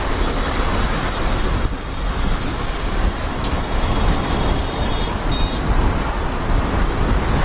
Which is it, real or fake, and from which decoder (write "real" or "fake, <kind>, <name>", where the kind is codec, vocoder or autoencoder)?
real